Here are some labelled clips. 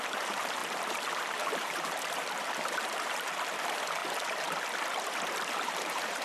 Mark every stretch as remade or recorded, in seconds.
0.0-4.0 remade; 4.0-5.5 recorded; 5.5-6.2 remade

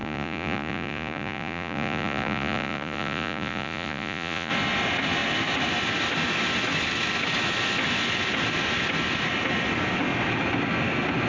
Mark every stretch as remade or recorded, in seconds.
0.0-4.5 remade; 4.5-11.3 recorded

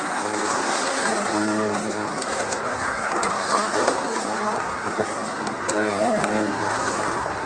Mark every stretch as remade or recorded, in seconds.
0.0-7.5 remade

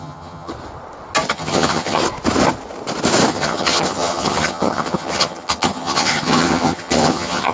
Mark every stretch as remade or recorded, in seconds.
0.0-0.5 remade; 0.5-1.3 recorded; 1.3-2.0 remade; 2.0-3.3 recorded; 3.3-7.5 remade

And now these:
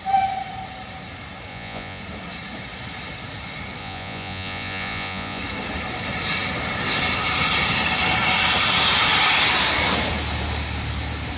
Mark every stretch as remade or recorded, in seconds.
0.0-1.5 recorded; 1.5-2.0 remade; 2.0-3.8 recorded; 3.8-5.4 remade; 5.4-11.4 recorded

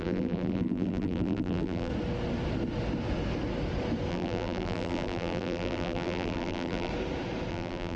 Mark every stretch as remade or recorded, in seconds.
0.0-1.9 remade; 1.9-4.1 recorded; 4.1-6.9 remade; 6.9-7.5 recorded; 7.5-8.0 remade

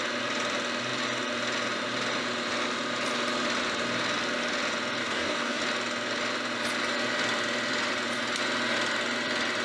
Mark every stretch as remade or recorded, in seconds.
0.0-5.0 recorded; 5.0-5.6 remade; 5.6-9.6 recorded